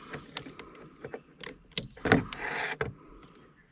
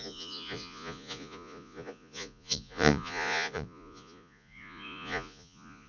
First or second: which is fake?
second